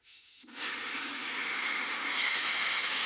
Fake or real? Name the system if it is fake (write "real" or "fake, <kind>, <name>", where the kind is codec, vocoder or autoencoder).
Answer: fake, autoencoder, DAC-VAE